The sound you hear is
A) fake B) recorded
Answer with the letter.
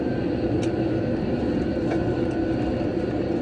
B